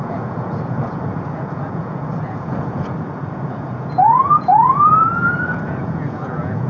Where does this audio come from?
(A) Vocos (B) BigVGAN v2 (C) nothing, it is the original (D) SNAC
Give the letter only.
A